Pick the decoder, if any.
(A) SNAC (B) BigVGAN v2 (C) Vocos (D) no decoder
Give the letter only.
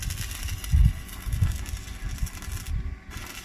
D